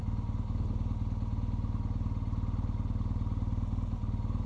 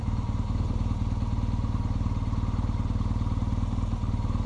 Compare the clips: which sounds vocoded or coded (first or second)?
second